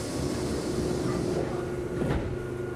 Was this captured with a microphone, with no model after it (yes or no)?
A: yes